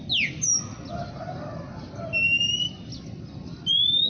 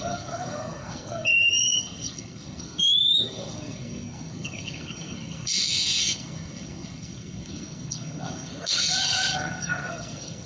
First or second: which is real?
first